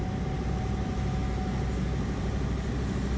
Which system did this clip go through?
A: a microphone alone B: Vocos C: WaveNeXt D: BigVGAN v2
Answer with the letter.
A